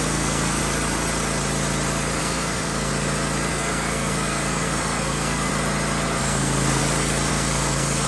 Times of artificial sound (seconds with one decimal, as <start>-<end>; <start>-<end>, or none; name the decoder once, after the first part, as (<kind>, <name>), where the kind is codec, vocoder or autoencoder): 0.0-0.6 (codec, SNAC); 2.2-2.9; 3.5-5.5; 6.2-6.8; 7.3-8.1